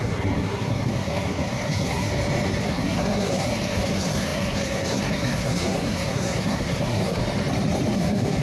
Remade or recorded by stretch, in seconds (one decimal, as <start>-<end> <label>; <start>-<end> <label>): 0.0-2.1 remade; 2.1-2.6 recorded; 2.6-7.2 remade; 7.2-7.9 recorded; 7.9-8.4 remade